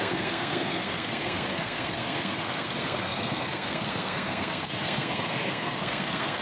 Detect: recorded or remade remade